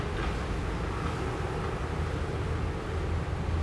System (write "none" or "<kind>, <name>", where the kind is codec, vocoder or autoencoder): none